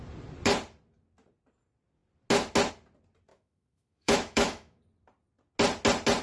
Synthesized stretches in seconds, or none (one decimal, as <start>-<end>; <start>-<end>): 3.3-4.8